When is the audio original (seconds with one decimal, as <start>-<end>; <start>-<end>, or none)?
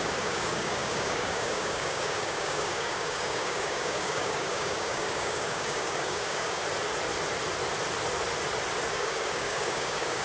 6.6-8.9